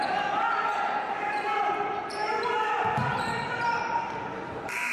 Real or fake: fake